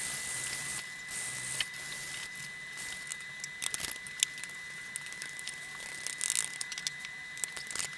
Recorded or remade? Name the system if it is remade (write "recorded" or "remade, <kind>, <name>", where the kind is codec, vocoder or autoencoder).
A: recorded